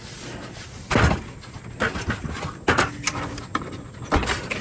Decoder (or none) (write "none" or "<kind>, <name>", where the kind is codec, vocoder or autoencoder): none